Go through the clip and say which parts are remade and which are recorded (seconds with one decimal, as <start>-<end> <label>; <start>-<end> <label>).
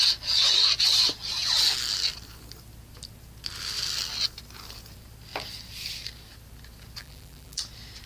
0.0-7.0 recorded; 7.0-7.6 remade; 7.6-8.1 recorded